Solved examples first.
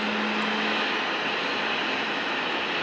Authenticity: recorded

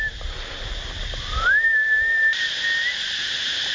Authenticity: recorded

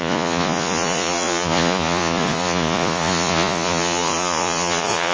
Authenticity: remade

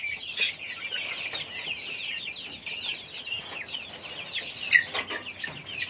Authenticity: recorded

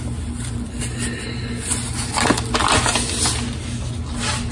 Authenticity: recorded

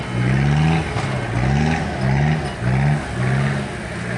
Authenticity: recorded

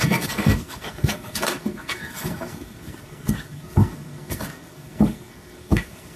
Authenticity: remade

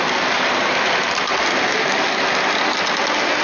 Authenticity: recorded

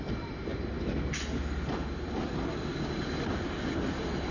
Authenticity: recorded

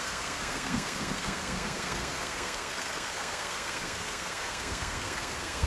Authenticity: remade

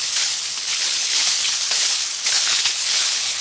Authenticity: remade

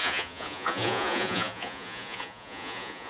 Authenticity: remade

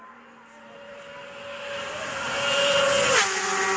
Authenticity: recorded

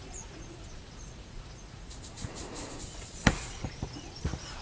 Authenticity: remade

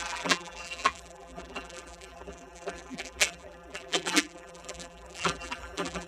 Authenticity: remade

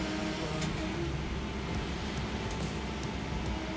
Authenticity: recorded